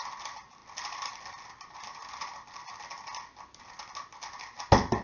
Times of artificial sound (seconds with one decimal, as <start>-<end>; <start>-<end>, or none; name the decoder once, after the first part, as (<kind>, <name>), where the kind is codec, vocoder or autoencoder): none